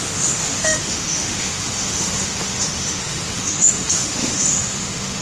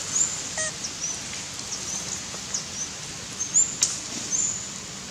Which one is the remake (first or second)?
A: first